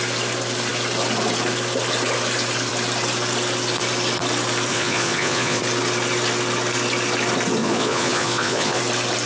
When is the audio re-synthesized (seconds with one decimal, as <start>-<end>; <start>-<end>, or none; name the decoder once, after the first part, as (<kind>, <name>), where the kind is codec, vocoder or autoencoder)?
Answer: 4.7-5.6 (vocoder, Vocos); 7.6-8.8